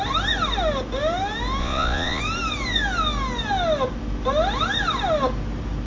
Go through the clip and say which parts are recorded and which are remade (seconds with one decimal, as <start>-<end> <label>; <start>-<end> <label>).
0.0-1.6 recorded; 1.6-2.2 remade; 2.2-5.9 recorded